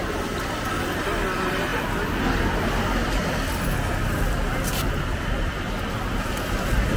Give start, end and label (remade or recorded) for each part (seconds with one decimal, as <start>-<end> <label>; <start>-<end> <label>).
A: 0.0-7.0 recorded